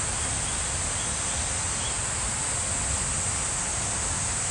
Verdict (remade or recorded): recorded